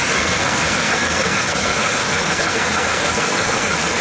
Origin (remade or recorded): remade